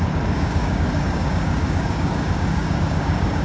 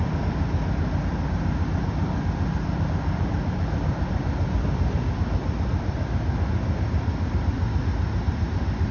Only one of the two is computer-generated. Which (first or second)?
first